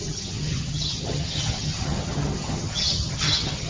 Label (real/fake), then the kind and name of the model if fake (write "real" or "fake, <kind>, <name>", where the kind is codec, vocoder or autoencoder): fake, vocoder, HiFi-GAN